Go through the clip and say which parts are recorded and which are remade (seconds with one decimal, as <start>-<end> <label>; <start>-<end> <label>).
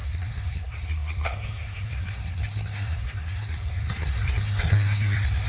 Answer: 0.0-5.5 remade